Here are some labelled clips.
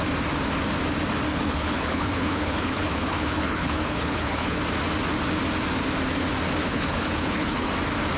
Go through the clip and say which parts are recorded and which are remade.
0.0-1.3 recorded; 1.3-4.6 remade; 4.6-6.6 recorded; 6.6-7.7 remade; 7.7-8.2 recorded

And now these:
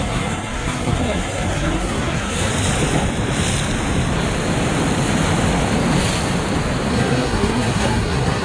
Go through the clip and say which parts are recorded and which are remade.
0.0-2.5 remade; 2.5-6.9 recorded; 6.9-8.4 remade

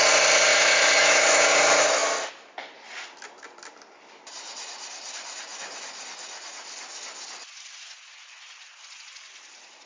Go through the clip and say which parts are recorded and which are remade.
0.0-0.5 recorded; 0.5-1.6 remade; 1.6-9.9 recorded

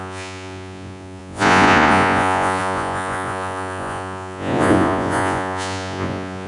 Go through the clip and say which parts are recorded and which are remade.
0.0-6.5 remade

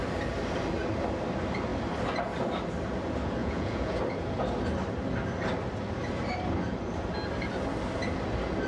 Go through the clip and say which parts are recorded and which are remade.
0.0-3.4 recorded; 3.4-4.0 remade; 4.0-8.7 recorded

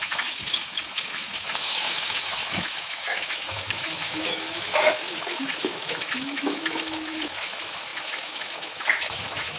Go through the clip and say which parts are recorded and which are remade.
0.0-9.6 remade

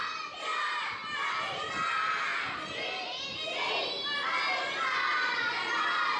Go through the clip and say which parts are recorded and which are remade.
0.0-6.2 recorded